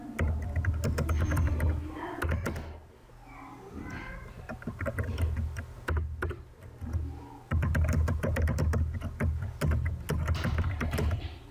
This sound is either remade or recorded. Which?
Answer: recorded